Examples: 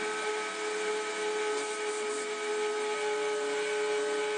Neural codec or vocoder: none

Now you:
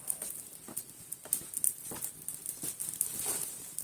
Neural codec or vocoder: none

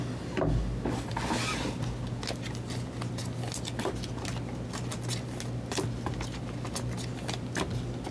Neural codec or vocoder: none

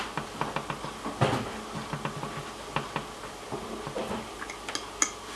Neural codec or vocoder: none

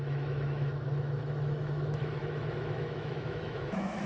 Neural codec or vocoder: autoencoder, DAC-VAE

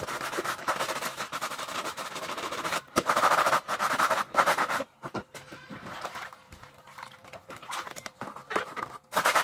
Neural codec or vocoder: vocoder, BigVGAN v2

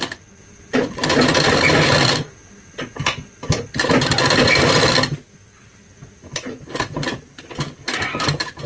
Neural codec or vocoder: none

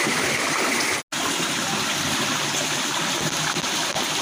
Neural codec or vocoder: none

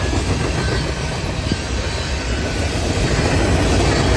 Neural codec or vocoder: none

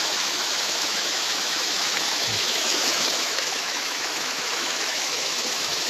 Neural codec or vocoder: autoencoder, DAC-VAE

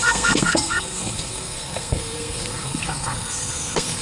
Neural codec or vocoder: codec, SNAC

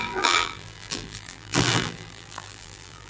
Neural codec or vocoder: vocoder, BigVGAN v2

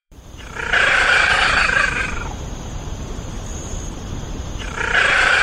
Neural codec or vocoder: vocoder, BigVGAN v2